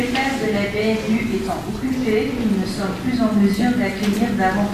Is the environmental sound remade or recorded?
recorded